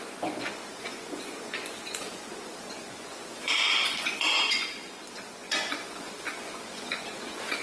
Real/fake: fake